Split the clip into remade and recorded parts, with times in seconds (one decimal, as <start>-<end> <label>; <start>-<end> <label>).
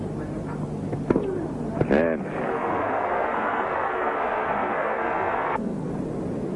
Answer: 0.0-2.5 recorded; 2.5-5.9 remade; 5.9-6.6 recorded